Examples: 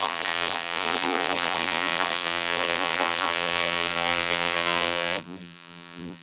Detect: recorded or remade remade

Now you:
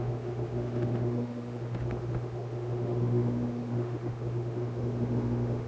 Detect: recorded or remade remade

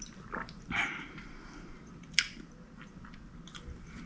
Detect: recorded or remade recorded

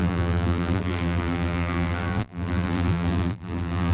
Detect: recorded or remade remade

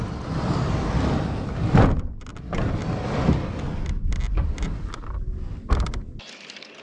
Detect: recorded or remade recorded